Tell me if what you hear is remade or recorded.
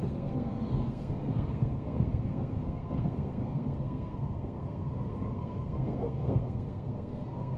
remade